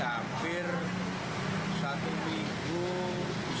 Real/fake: real